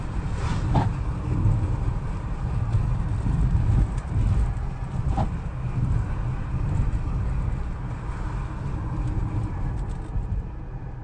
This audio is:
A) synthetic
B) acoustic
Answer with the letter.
B